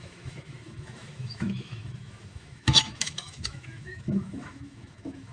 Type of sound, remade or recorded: remade